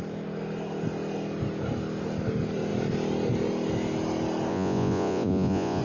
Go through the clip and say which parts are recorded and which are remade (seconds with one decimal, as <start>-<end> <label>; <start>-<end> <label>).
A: 0.0-4.5 recorded; 4.5-5.8 remade